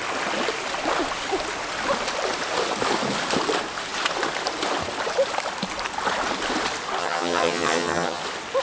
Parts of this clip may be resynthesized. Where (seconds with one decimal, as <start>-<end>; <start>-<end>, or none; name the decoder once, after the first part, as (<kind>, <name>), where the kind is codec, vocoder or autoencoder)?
7.0-8.2 (vocoder, HiFi-GAN)